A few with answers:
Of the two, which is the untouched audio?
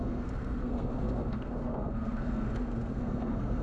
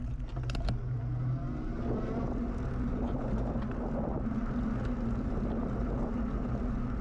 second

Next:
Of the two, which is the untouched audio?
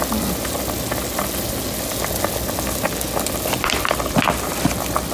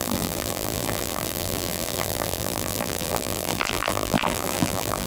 first